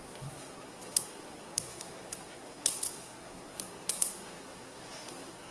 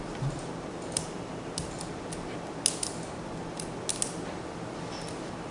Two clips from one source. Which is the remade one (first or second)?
first